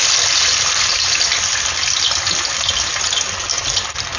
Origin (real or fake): real